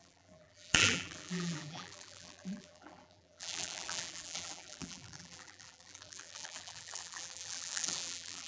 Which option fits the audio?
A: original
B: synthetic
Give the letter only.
B